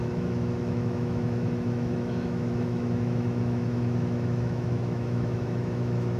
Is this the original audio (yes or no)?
no